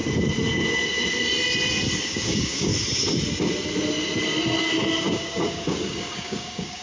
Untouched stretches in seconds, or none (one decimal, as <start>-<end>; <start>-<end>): 0.0-2.0; 2.7-5.0

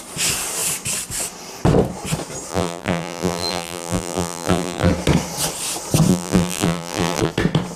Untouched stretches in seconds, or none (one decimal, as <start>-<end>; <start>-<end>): 0.0-2.5; 4.9-6.1; 7.3-7.8

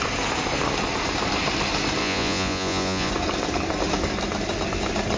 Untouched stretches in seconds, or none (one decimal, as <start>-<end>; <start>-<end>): 0.0-2.0; 3.1-5.2

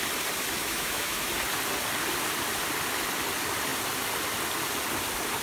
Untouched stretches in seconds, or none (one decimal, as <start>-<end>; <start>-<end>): 0.0-0.6; 1.3-5.4